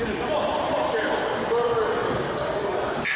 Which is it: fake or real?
real